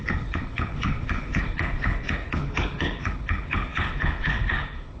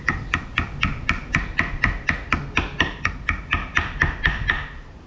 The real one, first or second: second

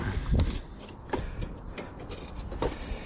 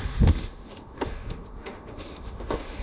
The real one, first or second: first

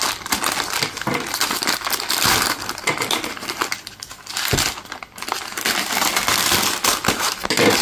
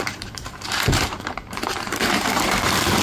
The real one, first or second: first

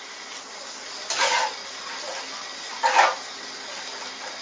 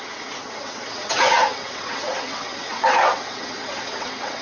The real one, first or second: first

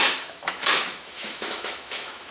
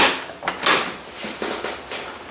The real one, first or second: second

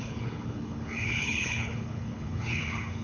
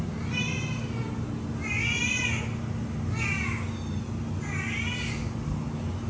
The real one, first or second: second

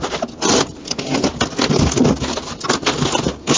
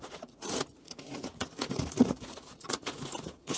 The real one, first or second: first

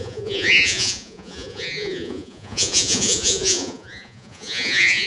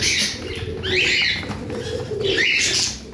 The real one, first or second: second